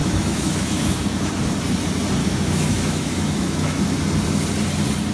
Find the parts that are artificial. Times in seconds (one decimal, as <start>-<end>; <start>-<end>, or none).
0.0-1.3; 2.2-3.8